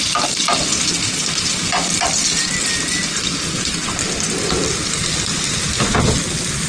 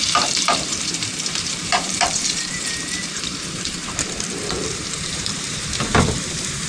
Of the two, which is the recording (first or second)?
first